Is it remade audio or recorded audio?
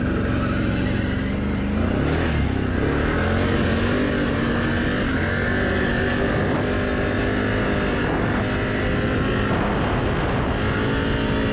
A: recorded